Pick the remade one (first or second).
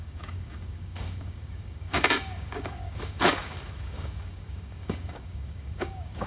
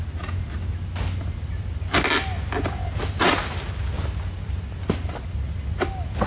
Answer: first